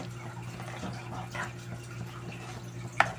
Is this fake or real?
real